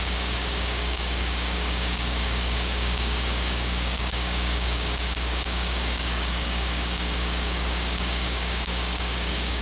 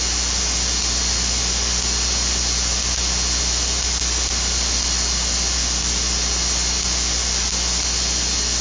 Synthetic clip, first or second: first